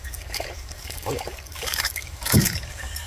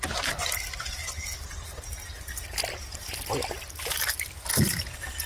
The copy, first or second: first